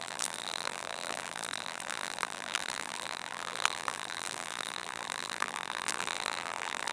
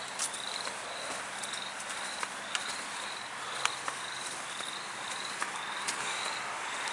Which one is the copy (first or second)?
first